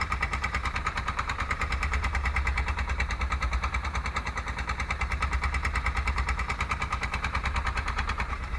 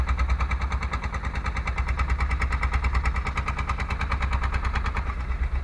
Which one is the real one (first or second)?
second